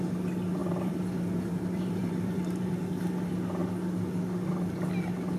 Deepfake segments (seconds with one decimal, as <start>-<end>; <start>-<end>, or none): 0.6-2.7